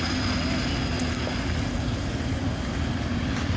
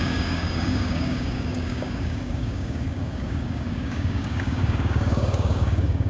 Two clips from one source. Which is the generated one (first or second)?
second